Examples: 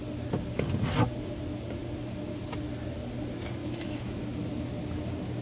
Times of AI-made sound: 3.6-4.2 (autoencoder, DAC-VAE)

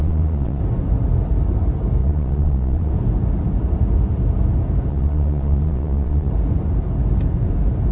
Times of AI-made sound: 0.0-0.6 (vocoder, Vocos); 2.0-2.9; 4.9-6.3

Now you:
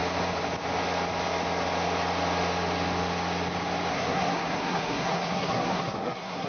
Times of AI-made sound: 3.9-6.5 (codec, SNAC)

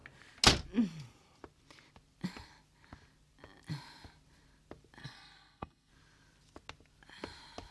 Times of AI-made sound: 5.0-5.9 (codec, SNAC)

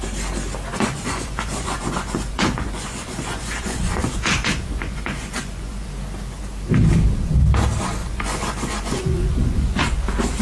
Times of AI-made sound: 0.7-5.9 (vocoder, Vocos); 8.0-10.0